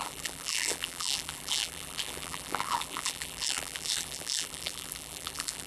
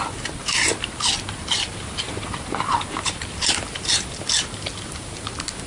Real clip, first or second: second